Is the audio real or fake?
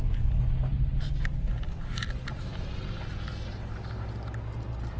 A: real